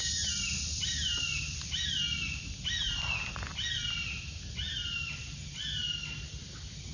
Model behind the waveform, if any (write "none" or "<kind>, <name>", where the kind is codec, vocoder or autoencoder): none